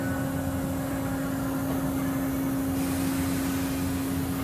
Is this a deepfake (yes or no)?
no